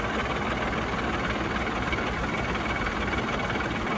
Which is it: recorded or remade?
recorded